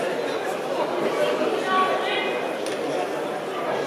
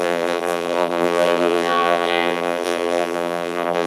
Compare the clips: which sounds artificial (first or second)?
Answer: second